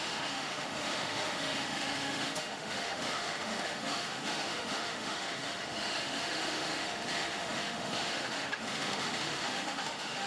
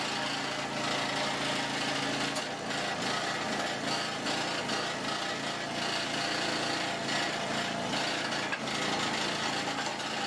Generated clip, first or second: first